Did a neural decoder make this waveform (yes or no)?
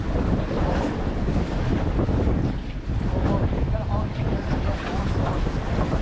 no